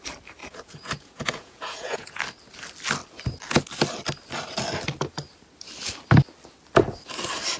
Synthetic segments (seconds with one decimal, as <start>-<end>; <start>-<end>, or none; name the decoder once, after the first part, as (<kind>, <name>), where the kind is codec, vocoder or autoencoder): 0.4-2.2 (vocoder, Vocos)